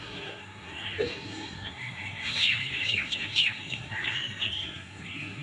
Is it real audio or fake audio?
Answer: fake